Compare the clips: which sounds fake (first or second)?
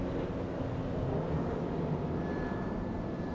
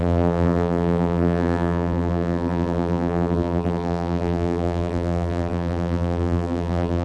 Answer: second